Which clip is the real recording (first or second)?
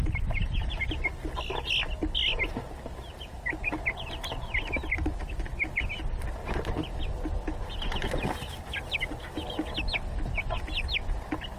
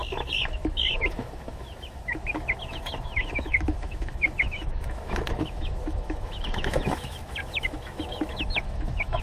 first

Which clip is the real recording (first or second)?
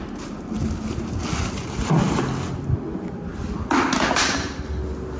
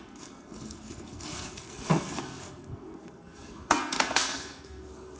first